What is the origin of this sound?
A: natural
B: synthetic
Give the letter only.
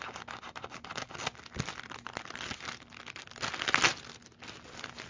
A